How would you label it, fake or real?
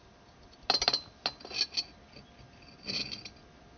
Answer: real